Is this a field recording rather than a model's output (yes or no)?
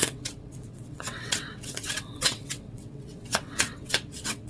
no